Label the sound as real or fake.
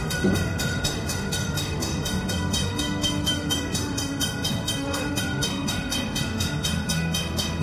fake